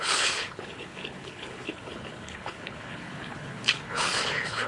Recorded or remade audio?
remade